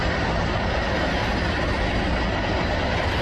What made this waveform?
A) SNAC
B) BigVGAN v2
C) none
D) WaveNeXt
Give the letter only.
C